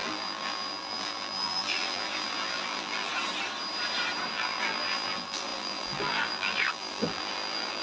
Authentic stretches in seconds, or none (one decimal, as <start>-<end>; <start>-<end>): 3.1-4.3